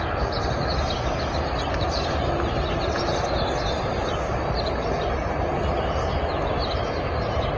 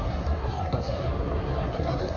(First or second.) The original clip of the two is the first